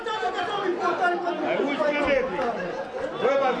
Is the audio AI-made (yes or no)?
no